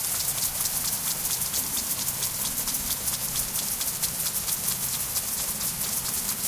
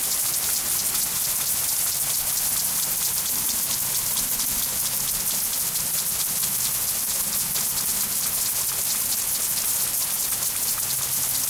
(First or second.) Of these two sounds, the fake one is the first